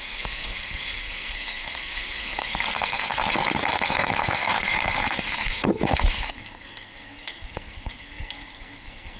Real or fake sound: fake